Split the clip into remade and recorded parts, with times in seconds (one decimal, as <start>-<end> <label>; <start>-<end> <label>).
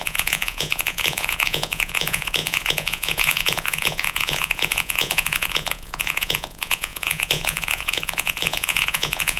0.0-9.4 remade